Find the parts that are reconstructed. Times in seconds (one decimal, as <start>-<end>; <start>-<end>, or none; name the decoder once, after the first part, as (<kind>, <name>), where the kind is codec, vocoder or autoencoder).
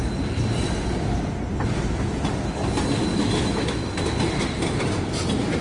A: 3.1-3.8 (autoencoder, DAC-VAE)